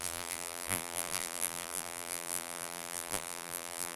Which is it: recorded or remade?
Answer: remade